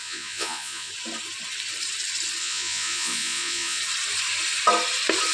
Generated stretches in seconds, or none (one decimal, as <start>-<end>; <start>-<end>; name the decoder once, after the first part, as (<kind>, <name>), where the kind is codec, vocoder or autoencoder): 0.0-0.9 (vocoder, Vocos); 2.4-3.8

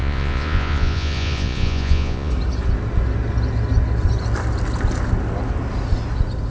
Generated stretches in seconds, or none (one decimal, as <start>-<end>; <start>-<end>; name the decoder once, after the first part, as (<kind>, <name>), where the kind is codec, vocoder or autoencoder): 0.0-2.3 (vocoder, Vocos)

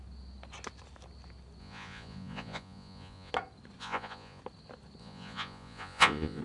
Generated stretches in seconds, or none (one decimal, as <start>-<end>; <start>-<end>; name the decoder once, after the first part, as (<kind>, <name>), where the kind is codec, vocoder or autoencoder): 1.6-3.3 (vocoder, Vocos); 3.8-4.4; 5.0-6.4

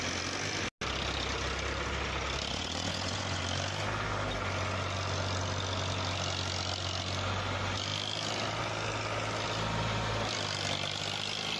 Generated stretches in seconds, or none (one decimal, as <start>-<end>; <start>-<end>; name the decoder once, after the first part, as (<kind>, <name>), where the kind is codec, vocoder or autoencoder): 2.5-3.4 (vocoder, Vocos)

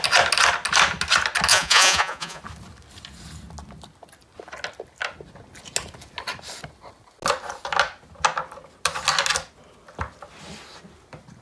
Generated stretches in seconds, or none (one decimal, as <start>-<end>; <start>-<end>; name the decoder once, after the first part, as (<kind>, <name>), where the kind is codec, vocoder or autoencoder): 1.5-2.4 (vocoder, Vocos)

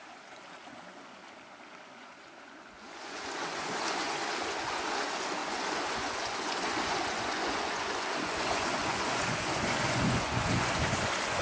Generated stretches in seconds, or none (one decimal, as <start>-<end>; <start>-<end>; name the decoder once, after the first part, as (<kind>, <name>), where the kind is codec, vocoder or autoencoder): 0.0-1.2 (vocoder, Vocos); 1.7-11.4

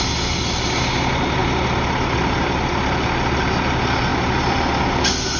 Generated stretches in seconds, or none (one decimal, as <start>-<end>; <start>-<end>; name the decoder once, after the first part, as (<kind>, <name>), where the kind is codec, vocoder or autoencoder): none

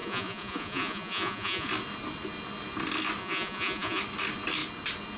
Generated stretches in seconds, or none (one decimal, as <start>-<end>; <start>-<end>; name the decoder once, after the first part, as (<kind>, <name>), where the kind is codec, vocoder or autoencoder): 0.0-1.7 (vocoder, Vocos); 3.2-4.0